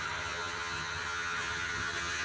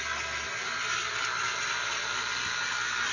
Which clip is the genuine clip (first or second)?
second